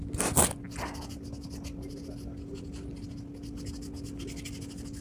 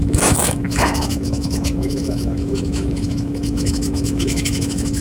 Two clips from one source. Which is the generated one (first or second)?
second